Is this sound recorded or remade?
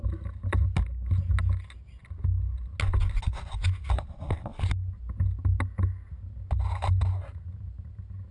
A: recorded